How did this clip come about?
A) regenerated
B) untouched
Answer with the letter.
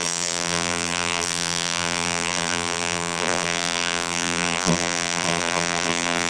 A